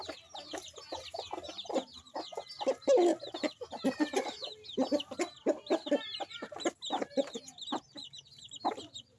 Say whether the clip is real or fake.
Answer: real